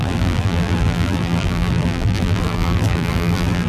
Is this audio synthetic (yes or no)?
yes